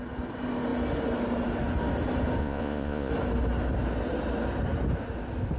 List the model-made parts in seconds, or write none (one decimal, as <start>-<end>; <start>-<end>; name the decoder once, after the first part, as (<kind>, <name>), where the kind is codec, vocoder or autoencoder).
2.4-3.1 (vocoder, Vocos)